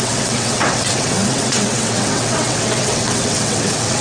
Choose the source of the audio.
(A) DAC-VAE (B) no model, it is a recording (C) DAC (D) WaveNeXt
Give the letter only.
D